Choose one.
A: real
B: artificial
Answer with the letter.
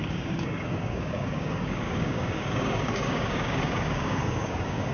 B